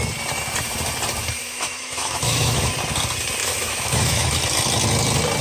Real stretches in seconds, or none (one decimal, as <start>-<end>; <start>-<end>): 0.0-1.4; 2.7-3.4; 4.3-5.4